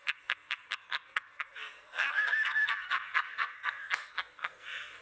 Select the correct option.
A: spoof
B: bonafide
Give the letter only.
A